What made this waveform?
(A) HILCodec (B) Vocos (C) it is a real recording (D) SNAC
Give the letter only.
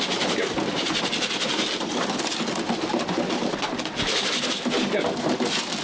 C